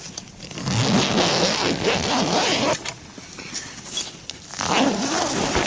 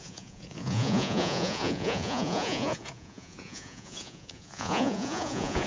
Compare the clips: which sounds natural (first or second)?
first